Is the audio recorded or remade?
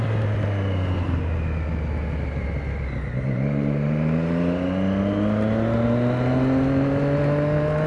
recorded